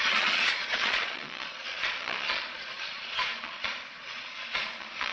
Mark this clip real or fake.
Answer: fake